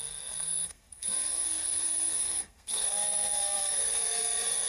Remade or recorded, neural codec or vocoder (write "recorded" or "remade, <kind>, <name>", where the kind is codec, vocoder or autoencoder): remade, codec, SNAC